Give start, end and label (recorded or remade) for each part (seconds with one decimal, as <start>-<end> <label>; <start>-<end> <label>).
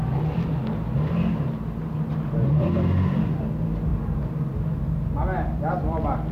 0.0-3.9 remade; 3.9-5.6 recorded; 5.6-6.3 remade